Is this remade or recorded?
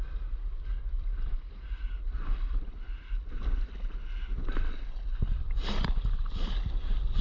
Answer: recorded